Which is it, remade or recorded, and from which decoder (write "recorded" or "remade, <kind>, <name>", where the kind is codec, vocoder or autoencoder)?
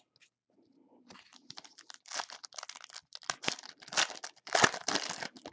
recorded